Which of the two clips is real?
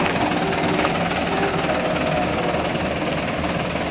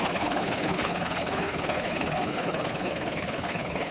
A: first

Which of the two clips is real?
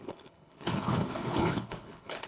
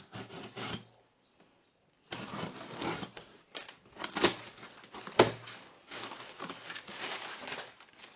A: second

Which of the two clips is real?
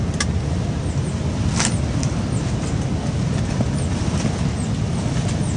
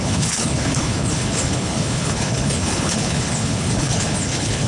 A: first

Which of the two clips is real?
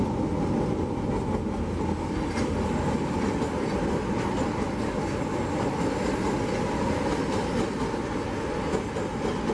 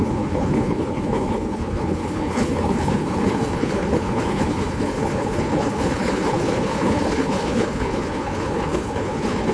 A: first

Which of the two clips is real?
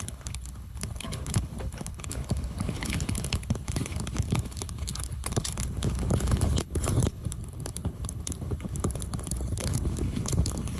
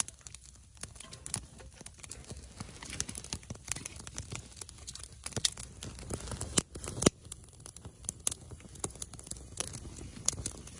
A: second